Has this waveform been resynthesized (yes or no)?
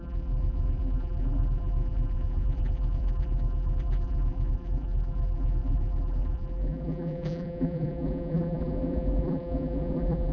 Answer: yes